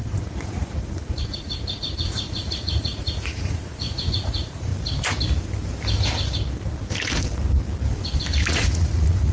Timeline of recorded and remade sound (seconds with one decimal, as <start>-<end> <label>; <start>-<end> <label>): 0.0-4.7 remade; 4.7-8.5 recorded; 8.5-9.3 remade